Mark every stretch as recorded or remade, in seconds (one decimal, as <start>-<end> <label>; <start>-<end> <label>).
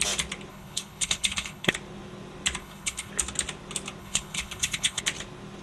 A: 0.0-0.5 recorded; 0.5-1.7 remade; 1.7-2.6 recorded; 2.6-3.1 remade; 3.1-4.0 recorded; 4.0-5.0 remade; 5.0-5.6 recorded